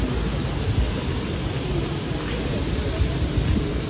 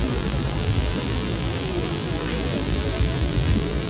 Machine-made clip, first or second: second